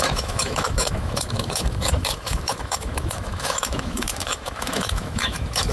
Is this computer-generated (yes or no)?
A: yes